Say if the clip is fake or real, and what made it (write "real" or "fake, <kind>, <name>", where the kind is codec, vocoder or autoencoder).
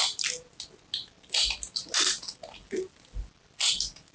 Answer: real